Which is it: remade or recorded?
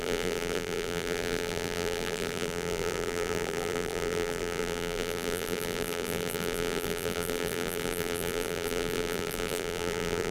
remade